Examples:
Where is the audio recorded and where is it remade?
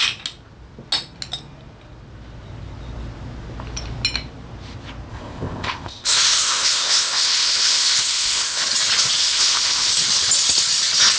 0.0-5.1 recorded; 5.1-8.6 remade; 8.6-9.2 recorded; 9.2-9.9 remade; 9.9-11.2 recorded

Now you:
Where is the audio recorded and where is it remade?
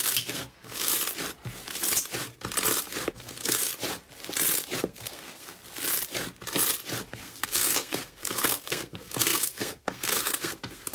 0.0-0.9 remade; 0.9-3.1 recorded; 3.1-3.6 remade; 3.6-4.8 recorded; 4.8-5.6 remade; 5.6-7.1 recorded; 7.1-10.9 remade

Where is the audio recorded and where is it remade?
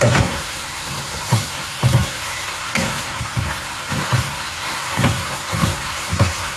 0.0-6.6 remade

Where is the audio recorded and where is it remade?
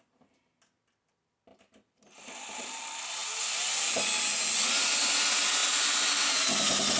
0.0-1.5 recorded; 1.5-2.8 remade; 2.8-7.0 recorded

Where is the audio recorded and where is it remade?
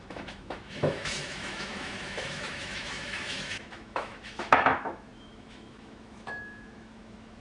0.0-7.4 remade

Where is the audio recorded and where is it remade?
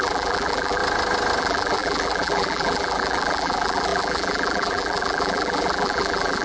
0.0-0.8 remade; 0.8-1.4 recorded; 1.4-6.4 remade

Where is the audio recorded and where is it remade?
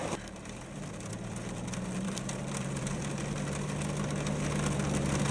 0.0-3.0 remade; 3.0-5.3 recorded